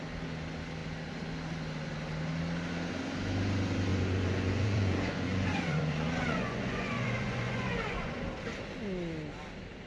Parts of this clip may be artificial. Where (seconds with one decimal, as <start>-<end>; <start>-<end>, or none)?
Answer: 3.9-8.1